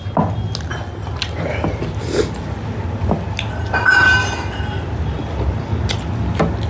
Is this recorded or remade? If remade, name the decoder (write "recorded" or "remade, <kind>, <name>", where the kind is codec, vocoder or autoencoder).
recorded